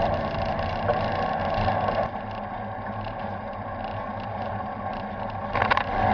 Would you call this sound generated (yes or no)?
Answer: no